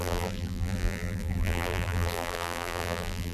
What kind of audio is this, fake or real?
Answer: fake